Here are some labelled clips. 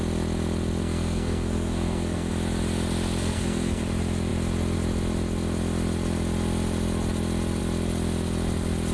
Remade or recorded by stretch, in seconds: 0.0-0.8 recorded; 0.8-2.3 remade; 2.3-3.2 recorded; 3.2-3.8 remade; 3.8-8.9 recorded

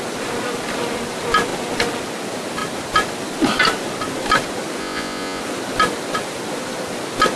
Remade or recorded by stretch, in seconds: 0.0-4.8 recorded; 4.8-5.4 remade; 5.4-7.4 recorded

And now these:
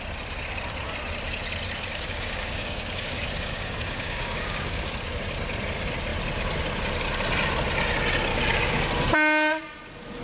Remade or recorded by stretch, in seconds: 0.0-1.9 recorded; 1.9-5.1 remade; 5.1-8.3 recorded; 8.3-8.8 remade; 8.8-10.2 recorded